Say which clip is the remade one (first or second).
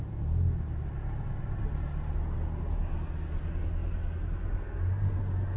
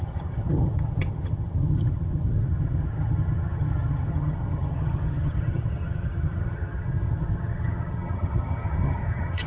second